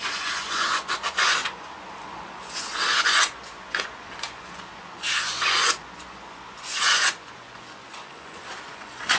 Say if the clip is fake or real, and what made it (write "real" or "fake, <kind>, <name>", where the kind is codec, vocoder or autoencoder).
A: fake, vocoder, Vocos